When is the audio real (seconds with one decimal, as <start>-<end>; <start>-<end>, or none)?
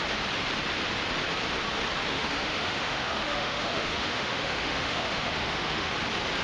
0.0-2.1; 5.9-6.4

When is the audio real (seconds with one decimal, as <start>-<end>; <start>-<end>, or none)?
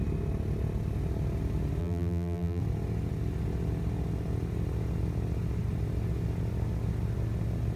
0.0-1.8; 2.6-7.8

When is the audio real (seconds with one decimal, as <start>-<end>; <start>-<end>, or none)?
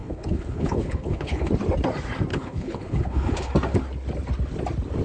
1.5-2.3; 3.5-5.0